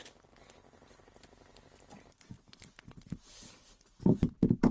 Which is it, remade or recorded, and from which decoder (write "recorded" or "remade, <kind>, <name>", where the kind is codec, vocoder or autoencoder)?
recorded